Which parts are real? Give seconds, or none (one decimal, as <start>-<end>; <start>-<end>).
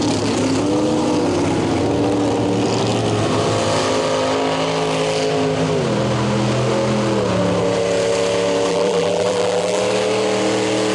0.0-8.7; 9.8-10.9